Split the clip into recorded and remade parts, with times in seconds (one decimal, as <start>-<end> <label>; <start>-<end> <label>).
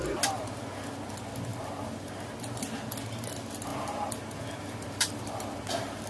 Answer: 0.0-1.5 recorded; 1.5-2.1 remade; 2.1-3.7 recorded; 3.7-6.1 remade